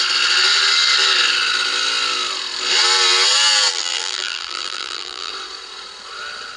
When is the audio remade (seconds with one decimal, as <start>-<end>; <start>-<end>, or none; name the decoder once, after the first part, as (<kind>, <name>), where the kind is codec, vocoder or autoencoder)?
3.7-5.3 (vocoder, BigVGAN v2)